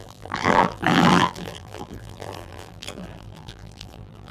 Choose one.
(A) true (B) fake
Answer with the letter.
B